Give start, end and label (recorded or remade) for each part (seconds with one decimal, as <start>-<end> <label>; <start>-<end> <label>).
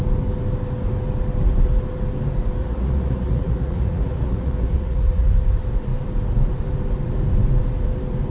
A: 0.0-2.6 recorded; 2.6-5.3 remade; 5.3-8.3 recorded